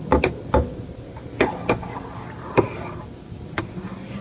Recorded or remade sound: recorded